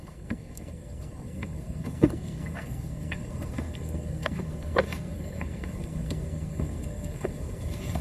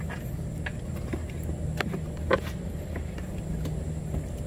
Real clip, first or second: second